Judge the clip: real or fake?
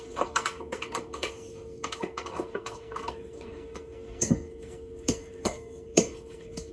fake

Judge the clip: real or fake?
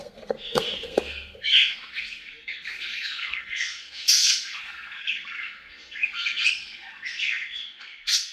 fake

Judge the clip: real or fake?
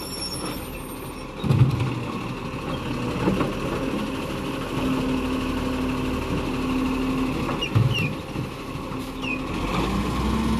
real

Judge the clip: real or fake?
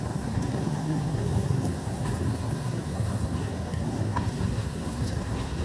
fake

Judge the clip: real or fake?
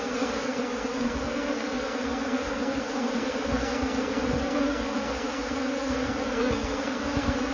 fake